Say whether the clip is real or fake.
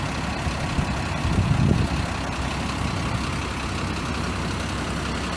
real